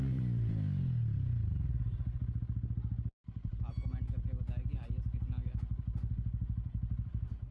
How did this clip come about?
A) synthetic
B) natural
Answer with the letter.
B